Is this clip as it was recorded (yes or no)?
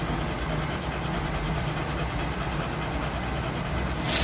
yes